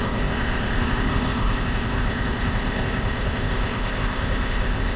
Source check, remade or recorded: remade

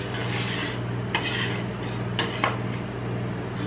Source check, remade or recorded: recorded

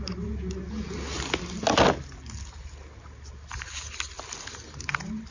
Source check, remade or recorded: recorded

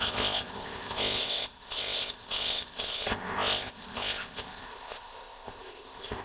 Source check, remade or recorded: remade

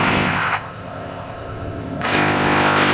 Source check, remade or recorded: remade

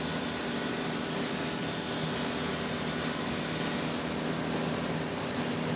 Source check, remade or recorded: recorded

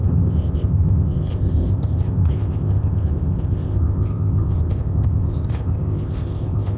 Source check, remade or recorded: remade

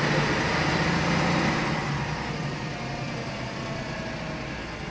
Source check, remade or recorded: recorded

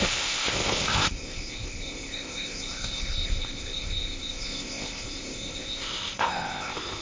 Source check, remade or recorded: remade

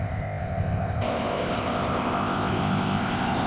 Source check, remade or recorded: remade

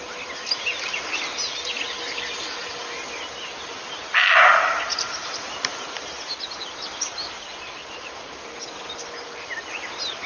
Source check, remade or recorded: recorded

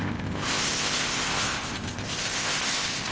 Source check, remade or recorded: remade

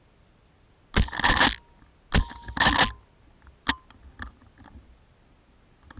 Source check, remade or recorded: recorded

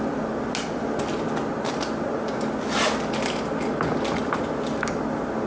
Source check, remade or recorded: recorded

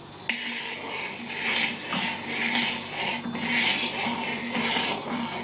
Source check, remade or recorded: recorded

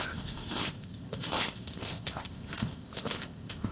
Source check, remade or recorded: remade